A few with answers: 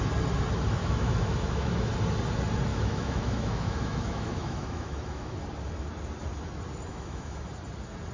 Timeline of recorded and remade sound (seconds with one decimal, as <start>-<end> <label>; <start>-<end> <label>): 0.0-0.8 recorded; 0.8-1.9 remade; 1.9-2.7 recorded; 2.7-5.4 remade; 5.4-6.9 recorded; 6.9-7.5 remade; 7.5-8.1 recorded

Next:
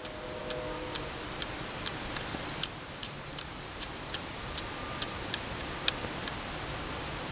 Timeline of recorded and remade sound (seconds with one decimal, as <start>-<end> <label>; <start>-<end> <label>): 0.0-3.0 recorded; 3.0-4.6 remade; 4.6-5.0 recorded; 5.0-5.6 remade; 5.6-7.3 recorded

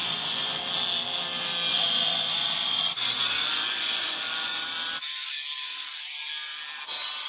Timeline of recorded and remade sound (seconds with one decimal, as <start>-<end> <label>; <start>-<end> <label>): 0.0-0.6 remade; 0.6-1.7 recorded; 1.7-4.6 remade; 4.6-7.3 recorded

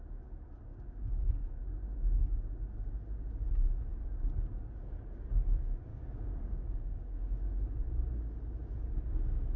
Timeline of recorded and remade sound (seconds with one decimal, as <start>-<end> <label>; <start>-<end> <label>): 0.0-0.7 recorded; 0.7-1.2 remade; 1.2-5.9 recorded; 5.9-7.2 remade; 7.2-9.6 recorded

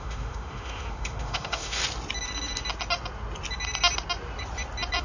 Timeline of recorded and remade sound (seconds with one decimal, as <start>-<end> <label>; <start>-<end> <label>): 0.0-1.8 remade; 1.8-5.0 recorded